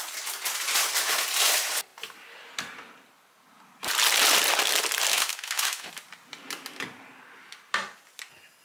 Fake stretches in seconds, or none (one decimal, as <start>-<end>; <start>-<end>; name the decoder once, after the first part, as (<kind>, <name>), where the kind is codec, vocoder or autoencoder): 5.1-5.9 (autoencoder, DAC-VAE)